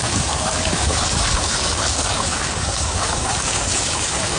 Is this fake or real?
fake